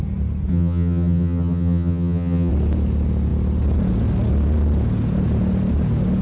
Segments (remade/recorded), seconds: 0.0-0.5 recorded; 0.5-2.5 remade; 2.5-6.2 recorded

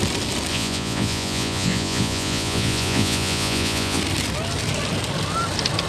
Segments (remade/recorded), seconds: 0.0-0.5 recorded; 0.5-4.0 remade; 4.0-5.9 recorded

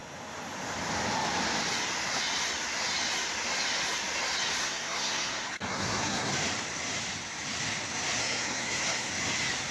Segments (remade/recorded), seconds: 0.0-4.6 recorded; 4.6-6.3 remade; 6.3-8.2 recorded; 8.2-9.1 remade; 9.1-9.7 recorded

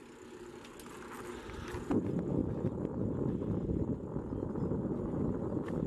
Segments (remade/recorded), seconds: 0.0-2.4 recorded; 2.4-4.5 remade; 4.5-5.9 recorded

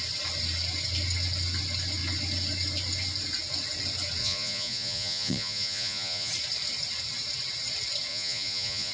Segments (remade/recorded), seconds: 0.0-4.2 recorded; 4.2-6.3 remade; 6.3-8.1 recorded; 8.1-8.9 remade

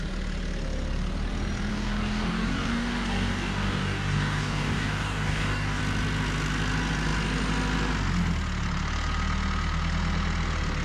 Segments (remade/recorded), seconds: 0.0-1.7 recorded; 1.7-5.8 remade; 5.8-10.8 recorded